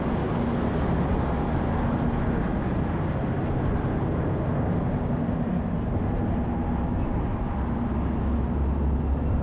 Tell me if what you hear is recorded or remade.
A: recorded